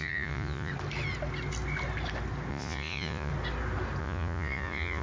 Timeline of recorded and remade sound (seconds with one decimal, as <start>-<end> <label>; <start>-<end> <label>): 0.0-0.7 remade; 0.7-2.5 recorded; 2.5-3.3 remade; 3.3-4.0 recorded; 4.0-5.0 remade